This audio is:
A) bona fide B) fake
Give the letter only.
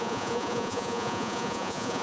B